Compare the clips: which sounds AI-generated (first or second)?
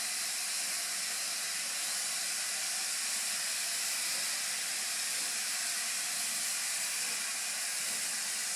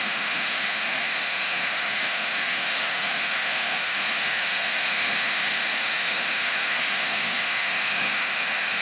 second